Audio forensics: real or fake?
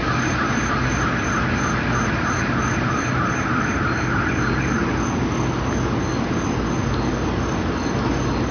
real